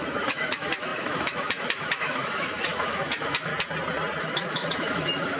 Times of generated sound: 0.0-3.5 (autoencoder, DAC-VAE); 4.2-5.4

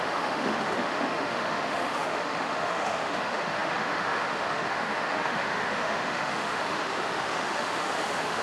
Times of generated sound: 0.0-8.4 (autoencoder, DAC-VAE)

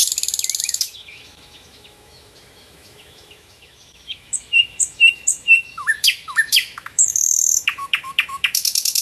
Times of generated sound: 0.6-9.0 (autoencoder, DAC-VAE)

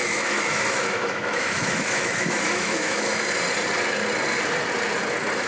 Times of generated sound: 0.0-3.3 (autoencoder, DAC-VAE)

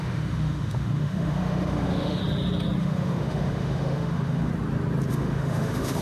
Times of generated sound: 0.0-2.2 (autoencoder, DAC-VAE); 2.8-4.5; 5.1-6.0

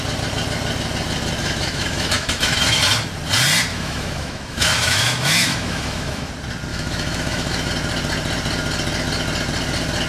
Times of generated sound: 1.4-2.8 (autoencoder, DAC-VAE); 3.7-6.3; 6.7-7.7

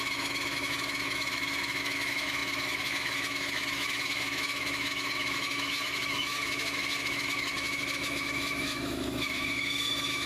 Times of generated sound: 0.0-10.3 (autoencoder, DAC-VAE)